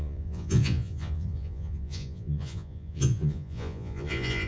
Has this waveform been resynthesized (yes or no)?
yes